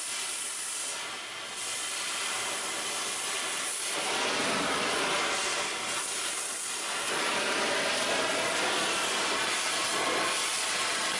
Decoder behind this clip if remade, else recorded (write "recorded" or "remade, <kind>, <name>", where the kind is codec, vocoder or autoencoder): remade, vocoder, BigVGAN v2